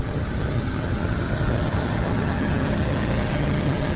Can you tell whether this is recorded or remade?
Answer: remade